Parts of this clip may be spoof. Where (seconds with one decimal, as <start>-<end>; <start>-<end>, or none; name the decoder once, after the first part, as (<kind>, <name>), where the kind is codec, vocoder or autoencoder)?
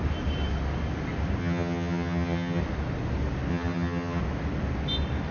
1.4-2.6 (vocoder, HiFi-GAN); 3.5-4.2